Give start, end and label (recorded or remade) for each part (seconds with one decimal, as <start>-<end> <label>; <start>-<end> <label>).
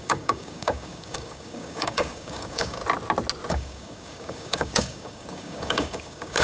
0.0-2.8 remade; 2.8-3.5 recorded; 3.5-6.4 remade